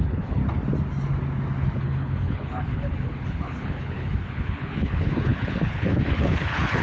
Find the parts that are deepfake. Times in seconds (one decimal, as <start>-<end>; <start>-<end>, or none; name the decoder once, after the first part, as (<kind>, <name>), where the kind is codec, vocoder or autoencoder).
0.0-0.4 (codec, HILCodec); 1.8-6.8